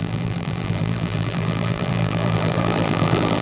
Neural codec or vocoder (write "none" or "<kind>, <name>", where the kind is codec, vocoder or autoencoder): vocoder, BigVGAN v2